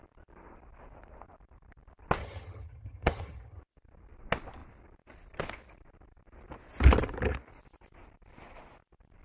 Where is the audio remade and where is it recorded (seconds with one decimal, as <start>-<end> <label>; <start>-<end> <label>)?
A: 0.0-2.2 recorded; 2.2-3.6 remade; 3.6-9.2 recorded